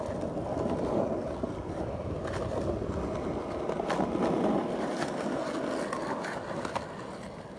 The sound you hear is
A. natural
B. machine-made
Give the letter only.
A